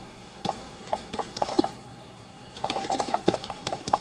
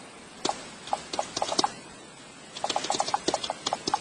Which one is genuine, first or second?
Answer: second